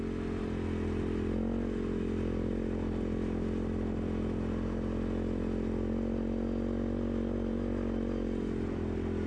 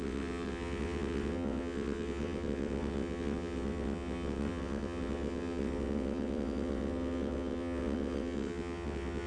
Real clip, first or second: first